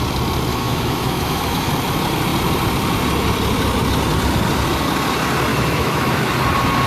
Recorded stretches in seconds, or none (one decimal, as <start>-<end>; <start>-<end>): 0.0-0.5; 1.7-5.5; 6.3-6.9